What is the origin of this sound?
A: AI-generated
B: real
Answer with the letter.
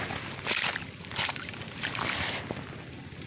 B